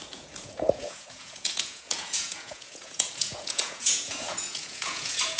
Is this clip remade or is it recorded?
remade